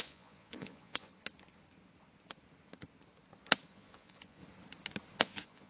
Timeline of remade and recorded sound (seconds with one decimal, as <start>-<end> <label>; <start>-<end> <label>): 0.0-1.1 remade; 1.1-3.7 recorded; 3.7-4.4 remade; 4.4-5.2 recorded; 5.2-5.7 remade